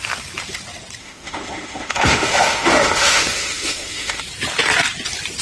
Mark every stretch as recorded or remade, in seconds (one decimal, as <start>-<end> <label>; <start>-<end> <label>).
0.0-1.0 recorded; 1.0-4.2 remade; 4.2-5.4 recorded